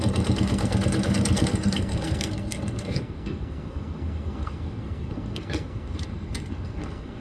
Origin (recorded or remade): remade